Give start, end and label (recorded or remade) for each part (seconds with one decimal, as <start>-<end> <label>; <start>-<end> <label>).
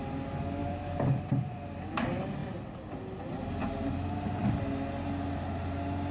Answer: 0.0-0.6 recorded; 0.6-1.2 remade; 1.2-6.1 recorded